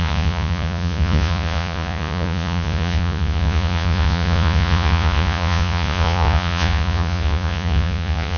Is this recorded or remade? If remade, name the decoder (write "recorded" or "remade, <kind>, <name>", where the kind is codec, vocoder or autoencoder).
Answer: remade, vocoder, Vocos